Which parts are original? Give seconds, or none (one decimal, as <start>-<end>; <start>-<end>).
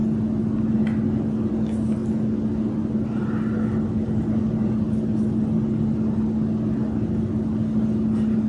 0.0-8.5